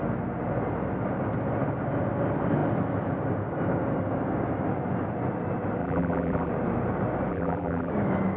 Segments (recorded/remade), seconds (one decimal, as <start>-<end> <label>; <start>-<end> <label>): 0.0-5.8 recorded; 5.8-6.5 remade; 6.5-7.3 recorded; 7.3-7.9 remade; 7.9-8.4 recorded